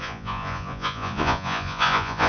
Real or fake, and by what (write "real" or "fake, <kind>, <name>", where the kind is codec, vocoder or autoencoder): fake, vocoder, Vocos